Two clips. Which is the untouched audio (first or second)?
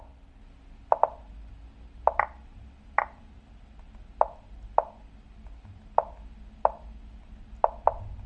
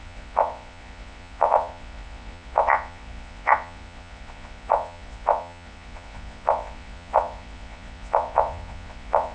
first